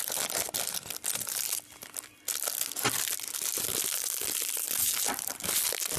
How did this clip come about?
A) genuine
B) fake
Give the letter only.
A